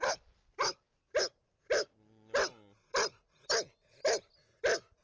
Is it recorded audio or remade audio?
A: recorded